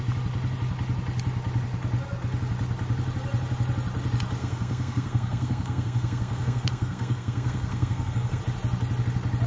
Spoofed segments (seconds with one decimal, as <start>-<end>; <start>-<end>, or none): 4.4-8.4